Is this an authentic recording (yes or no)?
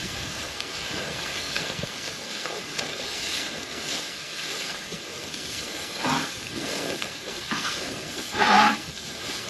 no